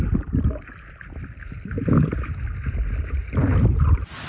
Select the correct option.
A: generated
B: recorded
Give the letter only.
B